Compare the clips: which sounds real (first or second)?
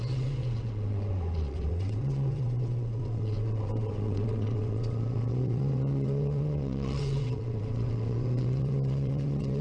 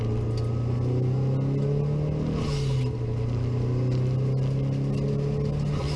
second